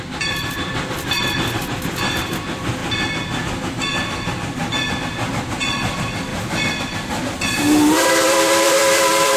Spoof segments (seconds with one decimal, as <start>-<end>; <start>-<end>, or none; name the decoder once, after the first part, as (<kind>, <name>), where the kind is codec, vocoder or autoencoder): 0.0-2.8 (vocoder, BigVGAN v2); 4.9-6.3; 6.8-9.4